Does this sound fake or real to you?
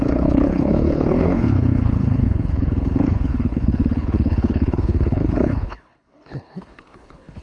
fake